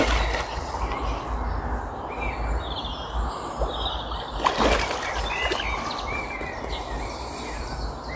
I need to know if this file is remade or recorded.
recorded